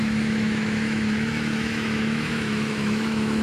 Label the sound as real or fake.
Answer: fake